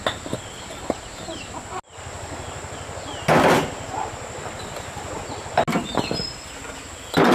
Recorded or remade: recorded